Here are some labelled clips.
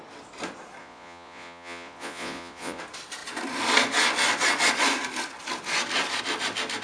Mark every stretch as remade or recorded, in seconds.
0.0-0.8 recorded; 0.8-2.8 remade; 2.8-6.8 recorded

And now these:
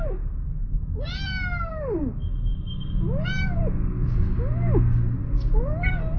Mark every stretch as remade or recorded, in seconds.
0.0-6.2 recorded

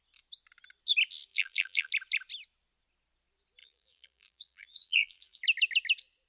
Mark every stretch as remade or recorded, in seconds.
0.0-1.3 recorded; 1.3-1.9 remade; 1.9-3.6 recorded; 3.6-5.4 remade; 5.4-6.3 recorded

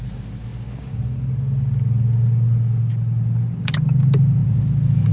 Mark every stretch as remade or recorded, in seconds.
0.0-5.1 recorded

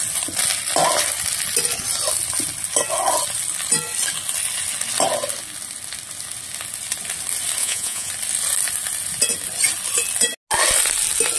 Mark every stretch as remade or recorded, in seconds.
0.0-7.6 recorded; 7.6-8.1 remade; 8.1-11.4 recorded

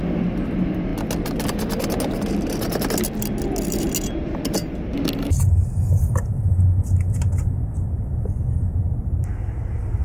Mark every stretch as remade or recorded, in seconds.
0.0-10.0 recorded